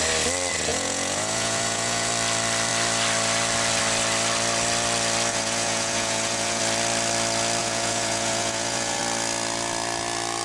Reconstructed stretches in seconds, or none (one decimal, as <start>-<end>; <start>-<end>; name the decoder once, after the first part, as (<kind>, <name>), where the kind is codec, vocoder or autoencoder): 0.7-2.1 (vocoder, Vocos); 5.3-6.6; 7.6-9.0